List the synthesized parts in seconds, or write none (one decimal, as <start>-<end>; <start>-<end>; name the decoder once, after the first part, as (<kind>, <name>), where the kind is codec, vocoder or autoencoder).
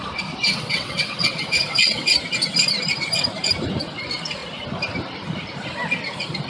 0.5-2.1 (vocoder, WaveNeXt)